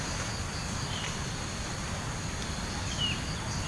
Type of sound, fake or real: real